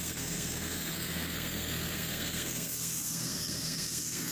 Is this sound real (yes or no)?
no